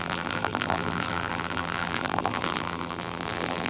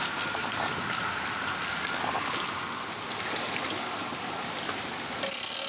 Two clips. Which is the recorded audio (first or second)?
second